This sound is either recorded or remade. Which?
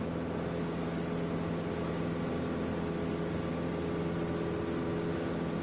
recorded